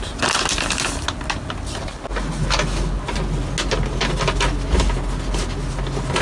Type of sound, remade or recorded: recorded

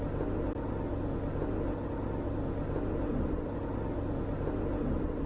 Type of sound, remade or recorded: recorded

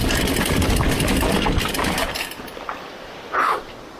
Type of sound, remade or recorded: recorded